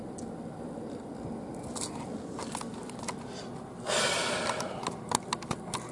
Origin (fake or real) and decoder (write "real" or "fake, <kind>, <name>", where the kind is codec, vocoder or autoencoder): real